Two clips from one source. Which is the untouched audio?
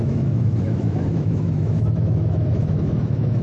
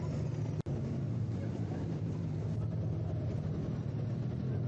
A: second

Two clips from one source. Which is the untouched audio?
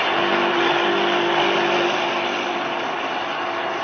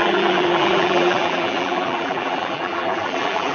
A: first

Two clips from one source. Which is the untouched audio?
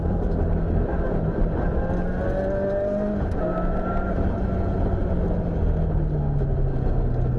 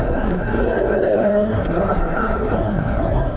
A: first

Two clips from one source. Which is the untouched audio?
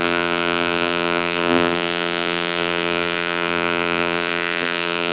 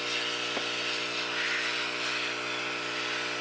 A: second